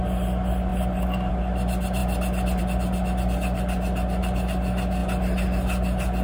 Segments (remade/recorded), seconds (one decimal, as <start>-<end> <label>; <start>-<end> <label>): 0.0-6.2 recorded